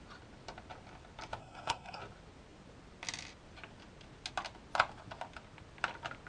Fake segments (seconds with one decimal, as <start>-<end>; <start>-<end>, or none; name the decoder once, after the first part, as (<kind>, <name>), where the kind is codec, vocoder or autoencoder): 1.4-2.0 (codec, SNAC)